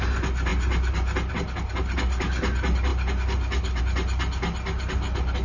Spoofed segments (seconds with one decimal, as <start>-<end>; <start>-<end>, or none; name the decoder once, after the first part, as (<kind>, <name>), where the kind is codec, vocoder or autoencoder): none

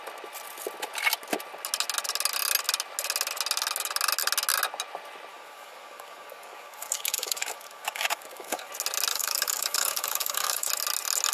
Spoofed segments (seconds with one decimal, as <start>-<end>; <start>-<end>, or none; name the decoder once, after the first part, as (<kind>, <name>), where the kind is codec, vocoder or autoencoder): 5.3-8.7 (codec, DAC); 9.1-10.7

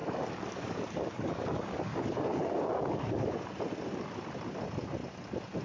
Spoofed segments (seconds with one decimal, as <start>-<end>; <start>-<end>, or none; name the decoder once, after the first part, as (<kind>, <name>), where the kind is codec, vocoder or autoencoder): 0.0-3.4 (codec, DAC)

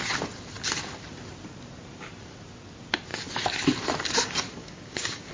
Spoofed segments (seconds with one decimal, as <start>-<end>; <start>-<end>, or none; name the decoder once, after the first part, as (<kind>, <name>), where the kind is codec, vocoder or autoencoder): 4.6-5.3 (codec, DAC)